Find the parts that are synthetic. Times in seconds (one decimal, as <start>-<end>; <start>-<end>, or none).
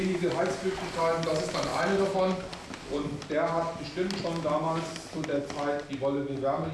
none